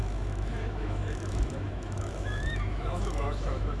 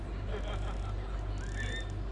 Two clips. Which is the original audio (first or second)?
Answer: second